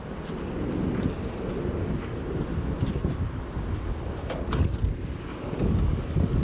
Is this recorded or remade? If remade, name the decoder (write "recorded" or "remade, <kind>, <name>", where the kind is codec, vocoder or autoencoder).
recorded